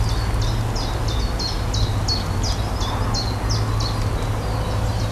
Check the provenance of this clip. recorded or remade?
recorded